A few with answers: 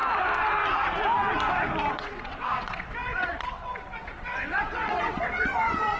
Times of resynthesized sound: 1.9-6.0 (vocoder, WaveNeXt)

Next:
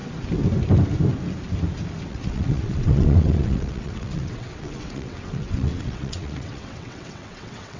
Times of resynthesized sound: 2.1-7.8 (vocoder, WaveNeXt)

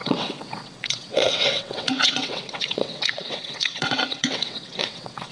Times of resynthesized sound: 0.0-5.3 (vocoder, WaveNeXt)

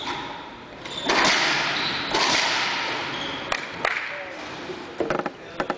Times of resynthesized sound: none

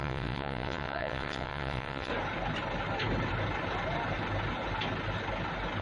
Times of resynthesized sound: 0.0-2.1 (vocoder, WaveNeXt)

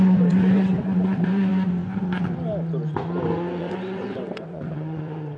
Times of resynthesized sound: 0.0-1.5 (vocoder, WaveNeXt); 3.6-5.4

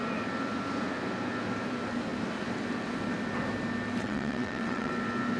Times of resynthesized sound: 4.0-4.9 (vocoder, WaveNeXt)